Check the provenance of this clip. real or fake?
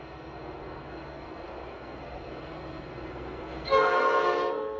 fake